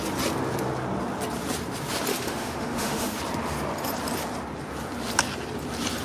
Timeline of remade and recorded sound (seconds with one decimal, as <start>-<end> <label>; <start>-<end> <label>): 0.0-2.1 recorded; 2.1-3.2 remade; 3.2-6.0 recorded